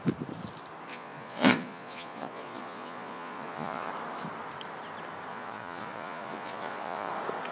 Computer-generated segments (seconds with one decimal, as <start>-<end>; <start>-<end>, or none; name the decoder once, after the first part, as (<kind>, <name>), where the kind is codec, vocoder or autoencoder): 0.9-3.9 (vocoder, Vocos); 5.3-7.1